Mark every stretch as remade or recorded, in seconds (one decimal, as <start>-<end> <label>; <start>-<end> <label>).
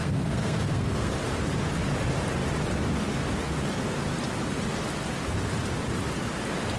0.0-1.1 remade; 1.1-6.8 recorded